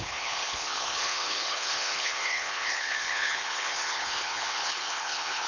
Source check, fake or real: fake